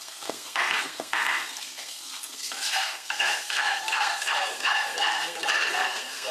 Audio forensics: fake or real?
fake